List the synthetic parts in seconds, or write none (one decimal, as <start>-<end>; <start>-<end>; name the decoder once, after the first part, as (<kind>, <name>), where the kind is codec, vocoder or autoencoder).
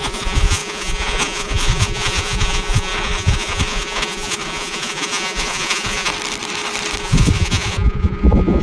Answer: 0.0-6.1 (vocoder, Vocos); 7.0-8.6